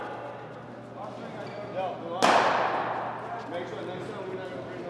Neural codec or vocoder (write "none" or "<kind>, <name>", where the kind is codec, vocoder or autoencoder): none